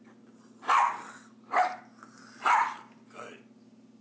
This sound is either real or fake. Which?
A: real